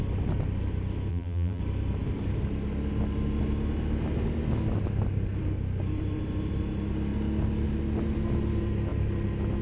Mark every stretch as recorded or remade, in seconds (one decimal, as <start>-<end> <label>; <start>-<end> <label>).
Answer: 0.0-1.1 recorded; 1.1-1.6 remade; 1.6-9.6 recorded